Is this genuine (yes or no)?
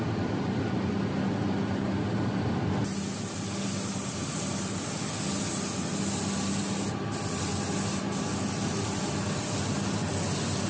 yes